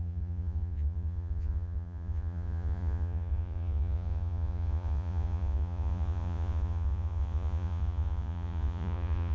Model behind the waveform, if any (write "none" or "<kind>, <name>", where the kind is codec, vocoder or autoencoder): vocoder, Vocos